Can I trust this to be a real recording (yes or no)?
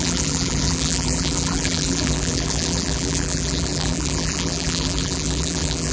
no